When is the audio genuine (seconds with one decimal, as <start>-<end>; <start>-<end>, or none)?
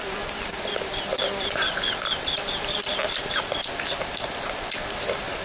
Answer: none